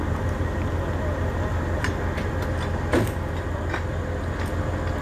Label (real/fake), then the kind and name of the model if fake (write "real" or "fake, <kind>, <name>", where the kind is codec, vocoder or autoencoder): real